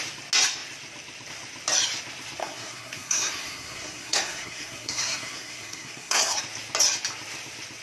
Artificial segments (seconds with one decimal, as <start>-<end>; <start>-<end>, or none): 2.4-6.4